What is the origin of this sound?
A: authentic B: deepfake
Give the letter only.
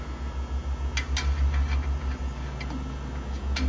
A